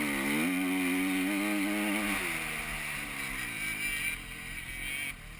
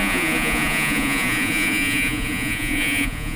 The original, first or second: first